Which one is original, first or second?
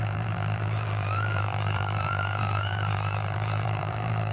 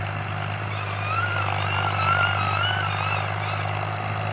second